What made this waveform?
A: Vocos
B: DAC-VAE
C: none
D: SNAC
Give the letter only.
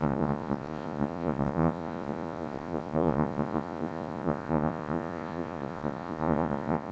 A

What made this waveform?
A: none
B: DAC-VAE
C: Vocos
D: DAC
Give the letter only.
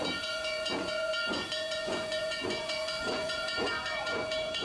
C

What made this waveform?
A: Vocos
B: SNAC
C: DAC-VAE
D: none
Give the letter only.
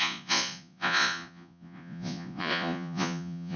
A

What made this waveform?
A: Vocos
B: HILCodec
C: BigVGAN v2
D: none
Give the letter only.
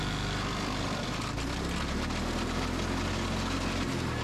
D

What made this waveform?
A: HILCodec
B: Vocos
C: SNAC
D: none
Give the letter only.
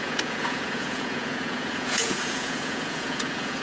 B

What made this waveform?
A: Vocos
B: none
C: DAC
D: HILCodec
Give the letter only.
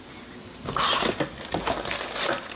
B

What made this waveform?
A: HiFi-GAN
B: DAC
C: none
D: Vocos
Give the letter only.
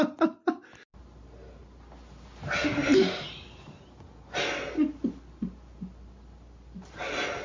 C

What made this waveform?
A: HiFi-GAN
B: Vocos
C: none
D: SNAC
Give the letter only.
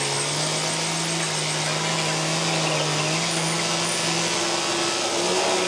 C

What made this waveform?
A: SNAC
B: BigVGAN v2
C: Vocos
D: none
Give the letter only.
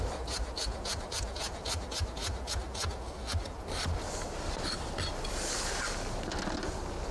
D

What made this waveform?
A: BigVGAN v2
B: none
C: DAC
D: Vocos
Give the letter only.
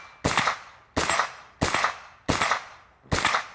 B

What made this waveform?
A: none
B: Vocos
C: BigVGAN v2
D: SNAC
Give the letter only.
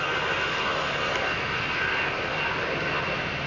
A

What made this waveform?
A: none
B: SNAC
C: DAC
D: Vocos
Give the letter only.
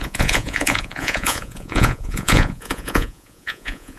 D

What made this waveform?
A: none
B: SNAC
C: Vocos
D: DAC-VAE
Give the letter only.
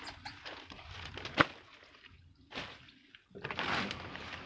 A